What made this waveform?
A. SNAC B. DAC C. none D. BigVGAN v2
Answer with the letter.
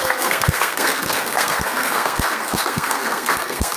A